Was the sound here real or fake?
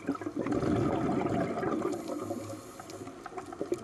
real